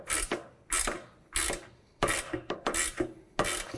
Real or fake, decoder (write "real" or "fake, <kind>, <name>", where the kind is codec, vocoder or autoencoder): real